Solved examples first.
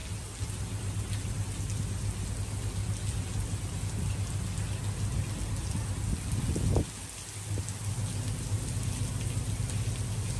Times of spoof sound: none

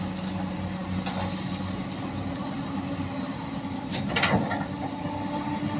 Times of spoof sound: none

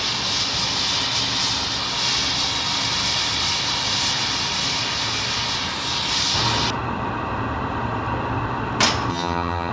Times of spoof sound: 9.1-9.7 (vocoder, HiFi-GAN)

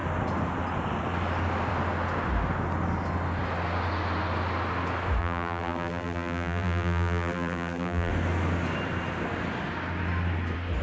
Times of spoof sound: 5.2-8.1 (vocoder, BigVGAN v2)

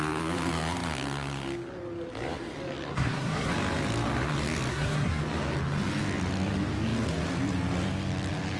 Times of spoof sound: 2.9-3.5 (codec, SNAC); 4.7-5.2

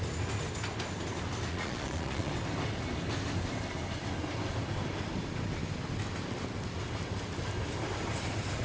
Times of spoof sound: 1.5-2.3 (vocoder, Vocos)

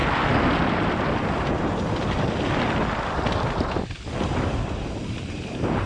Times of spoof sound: 0.6-5.9 (vocoder, BigVGAN v2)